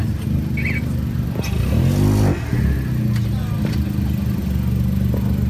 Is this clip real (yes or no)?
yes